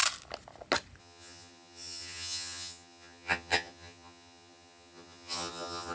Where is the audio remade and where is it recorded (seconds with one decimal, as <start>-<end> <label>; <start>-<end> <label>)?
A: 0.0-1.0 recorded; 1.0-5.9 remade